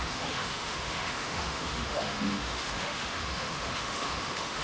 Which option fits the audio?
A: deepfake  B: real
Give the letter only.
A